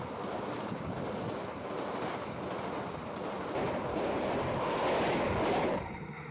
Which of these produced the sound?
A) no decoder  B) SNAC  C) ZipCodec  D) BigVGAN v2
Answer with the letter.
A